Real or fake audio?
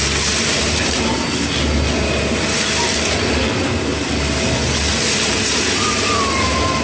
real